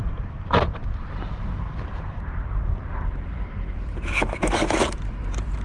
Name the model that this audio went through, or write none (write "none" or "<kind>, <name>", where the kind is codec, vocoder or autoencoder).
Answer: vocoder, BigVGAN v2